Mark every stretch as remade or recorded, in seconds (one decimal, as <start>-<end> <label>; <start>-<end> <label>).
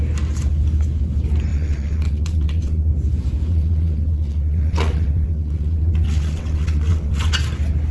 0.0-1.5 recorded; 1.5-2.9 remade; 2.9-3.5 recorded; 3.5-7.3 remade; 7.3-7.9 recorded